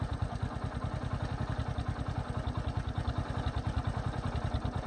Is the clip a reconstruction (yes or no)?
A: no